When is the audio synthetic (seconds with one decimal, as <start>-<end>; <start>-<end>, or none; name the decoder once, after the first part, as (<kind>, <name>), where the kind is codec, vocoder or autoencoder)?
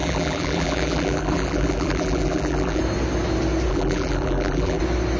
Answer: 0.0-2.8 (vocoder, BigVGAN v2); 3.7-4.8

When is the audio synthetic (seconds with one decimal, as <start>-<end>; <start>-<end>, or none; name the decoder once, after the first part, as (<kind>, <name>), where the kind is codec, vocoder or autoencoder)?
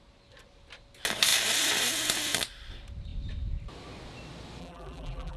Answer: 4.6-5.4 (vocoder, BigVGAN v2)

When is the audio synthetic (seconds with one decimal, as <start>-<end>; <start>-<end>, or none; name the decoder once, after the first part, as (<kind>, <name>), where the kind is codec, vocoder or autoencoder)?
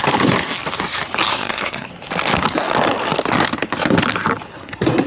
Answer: 1.3-1.9 (codec, SNAC); 4.5-5.1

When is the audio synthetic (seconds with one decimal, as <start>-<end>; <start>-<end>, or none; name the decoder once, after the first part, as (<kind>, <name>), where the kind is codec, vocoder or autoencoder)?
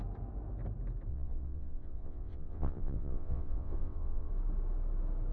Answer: 1.1-4.3 (vocoder, WaveNeXt)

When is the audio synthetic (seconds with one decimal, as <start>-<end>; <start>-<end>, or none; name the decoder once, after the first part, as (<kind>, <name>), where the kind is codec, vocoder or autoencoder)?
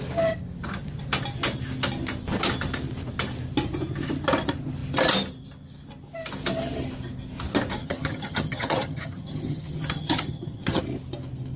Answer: 7.8-10.8 (vocoder, HiFi-GAN)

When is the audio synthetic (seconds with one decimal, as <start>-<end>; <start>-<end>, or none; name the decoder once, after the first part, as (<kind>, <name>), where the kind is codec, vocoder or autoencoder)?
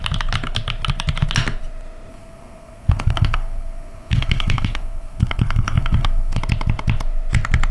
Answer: 2.1-6.4 (codec, SNAC)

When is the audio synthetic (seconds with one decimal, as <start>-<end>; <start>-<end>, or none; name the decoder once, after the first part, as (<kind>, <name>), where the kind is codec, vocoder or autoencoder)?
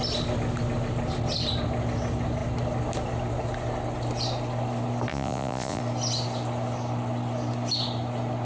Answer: 5.1-5.8 (vocoder, Vocos)